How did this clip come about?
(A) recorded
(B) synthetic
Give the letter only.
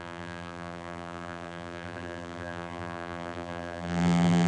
B